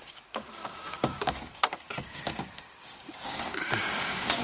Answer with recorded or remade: remade